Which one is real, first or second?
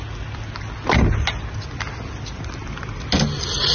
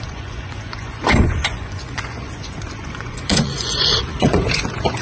first